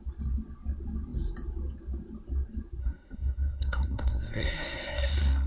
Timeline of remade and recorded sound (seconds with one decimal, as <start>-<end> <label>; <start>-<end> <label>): 0.0-2.8 recorded; 2.8-5.5 remade